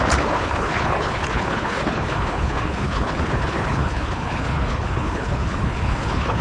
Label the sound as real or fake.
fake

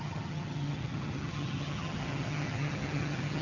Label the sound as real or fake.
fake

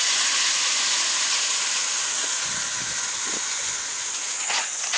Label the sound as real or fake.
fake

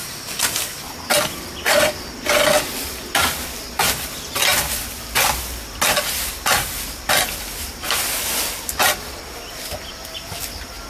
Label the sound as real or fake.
real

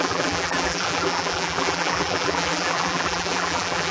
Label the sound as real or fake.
fake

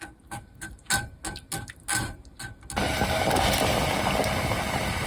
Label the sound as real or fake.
real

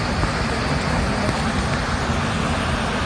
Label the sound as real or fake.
real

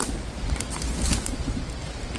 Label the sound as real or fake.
real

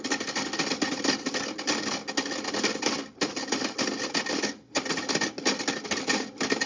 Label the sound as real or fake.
real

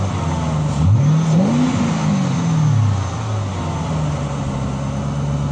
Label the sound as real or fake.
real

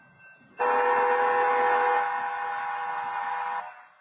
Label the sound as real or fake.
real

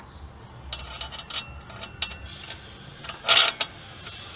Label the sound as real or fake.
real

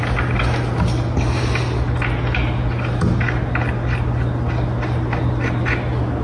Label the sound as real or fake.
real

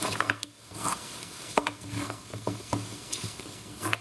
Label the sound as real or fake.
fake